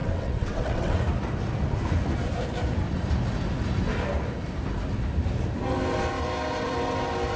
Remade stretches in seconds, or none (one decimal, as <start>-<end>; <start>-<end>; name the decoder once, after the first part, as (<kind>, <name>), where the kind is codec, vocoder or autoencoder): 0.0-1.0 (vocoder, WaveNeXt)